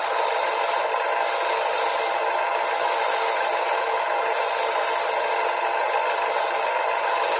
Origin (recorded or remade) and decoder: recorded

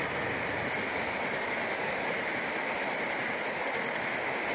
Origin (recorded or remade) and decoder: recorded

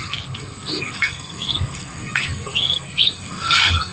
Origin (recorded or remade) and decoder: remade, codec, SNAC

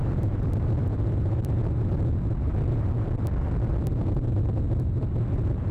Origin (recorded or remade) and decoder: remade, vocoder, BigVGAN v2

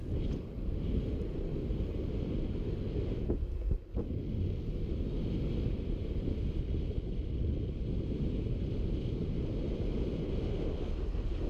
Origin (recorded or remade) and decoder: recorded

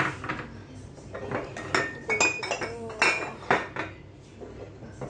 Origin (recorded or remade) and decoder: recorded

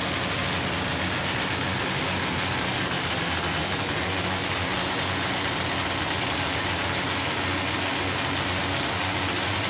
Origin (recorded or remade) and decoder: recorded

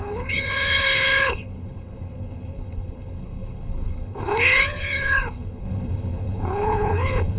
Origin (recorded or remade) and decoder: remade, codec, HILCodec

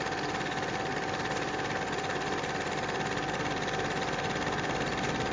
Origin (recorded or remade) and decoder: recorded